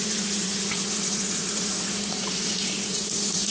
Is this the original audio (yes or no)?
no